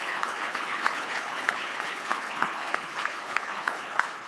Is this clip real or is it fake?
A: fake